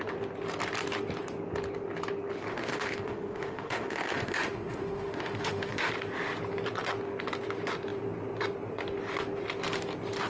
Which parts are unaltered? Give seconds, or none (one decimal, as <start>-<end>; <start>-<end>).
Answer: 0.0-2.5; 5.9-10.3